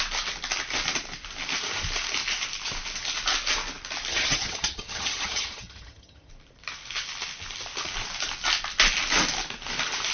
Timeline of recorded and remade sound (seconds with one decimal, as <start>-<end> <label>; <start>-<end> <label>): 0.0-4.1 recorded; 4.1-6.3 remade; 6.3-10.1 recorded